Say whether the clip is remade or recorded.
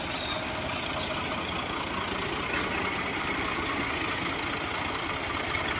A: recorded